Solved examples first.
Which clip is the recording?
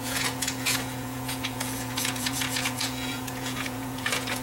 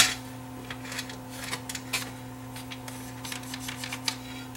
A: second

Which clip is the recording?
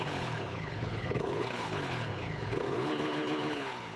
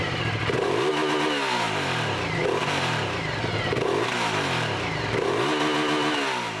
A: second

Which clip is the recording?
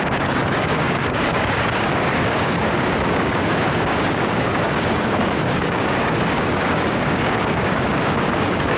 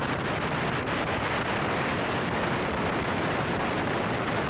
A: second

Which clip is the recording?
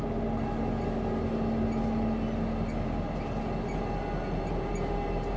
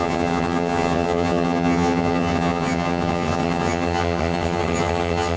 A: first